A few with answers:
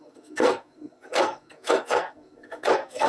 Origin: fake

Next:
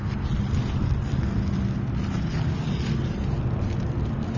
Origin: real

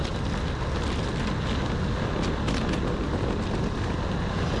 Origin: real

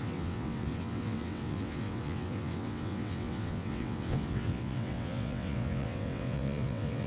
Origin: fake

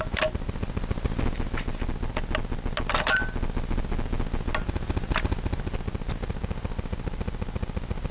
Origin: real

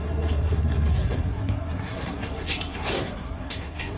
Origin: fake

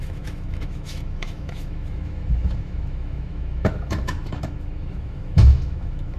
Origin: fake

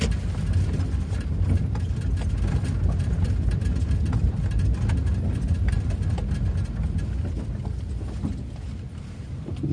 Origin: real